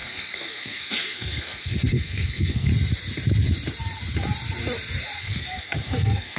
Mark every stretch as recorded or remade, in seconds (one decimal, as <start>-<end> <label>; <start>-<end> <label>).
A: 0.0-2.7 remade; 2.7-5.2 recorded; 5.2-6.4 remade